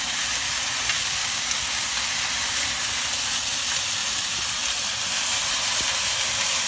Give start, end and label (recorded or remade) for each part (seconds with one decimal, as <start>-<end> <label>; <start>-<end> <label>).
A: 0.0-1.2 recorded; 1.2-1.8 remade; 1.8-6.7 recorded